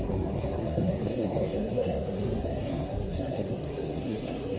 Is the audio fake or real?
fake